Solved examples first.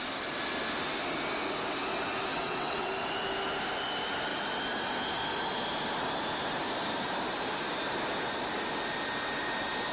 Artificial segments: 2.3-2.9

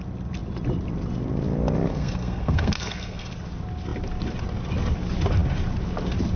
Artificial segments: 1.9-3.3

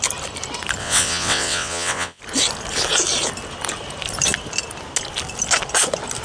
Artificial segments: 0.8-2.2

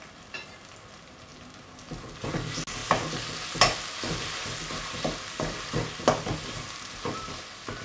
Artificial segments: none

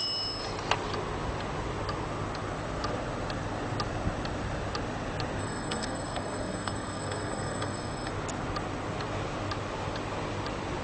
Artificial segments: 5.4-8.1

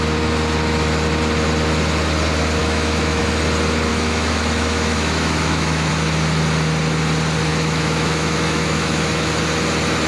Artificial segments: 2.6-3.2; 3.9-5.9; 7.5-9.4